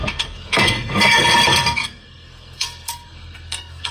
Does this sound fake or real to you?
fake